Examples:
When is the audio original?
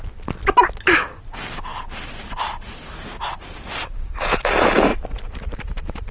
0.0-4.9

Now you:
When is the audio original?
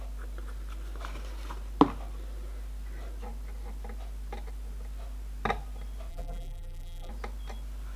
0.0-6.1; 7.1-8.0